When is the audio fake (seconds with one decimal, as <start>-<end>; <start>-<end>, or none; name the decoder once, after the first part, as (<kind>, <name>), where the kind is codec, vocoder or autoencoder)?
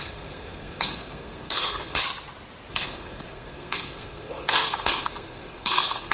0.0-2.0 (codec, SNAC); 2.7-6.1